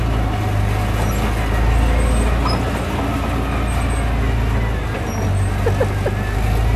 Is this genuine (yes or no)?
yes